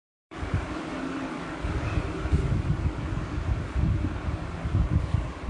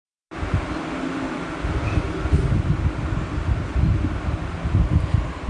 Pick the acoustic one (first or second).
second